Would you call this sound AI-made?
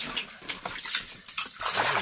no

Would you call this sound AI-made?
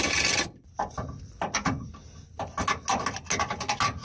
no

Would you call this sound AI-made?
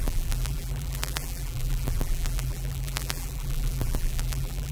yes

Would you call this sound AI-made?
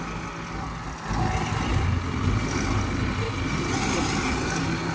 no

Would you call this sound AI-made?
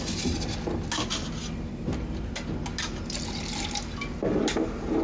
no